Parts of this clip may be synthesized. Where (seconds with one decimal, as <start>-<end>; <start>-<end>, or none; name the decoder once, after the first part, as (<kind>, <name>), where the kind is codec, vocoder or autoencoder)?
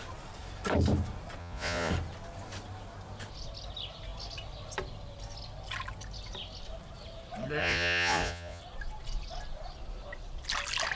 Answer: 1.4-1.9 (vocoder, Vocos); 7.6-8.6